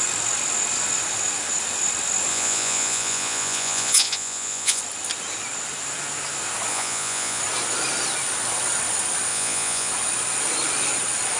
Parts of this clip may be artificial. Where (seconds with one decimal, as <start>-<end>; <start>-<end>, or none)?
2.3-4.8; 6.7-7.4; 9.3-9.9